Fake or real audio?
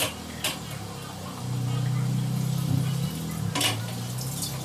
real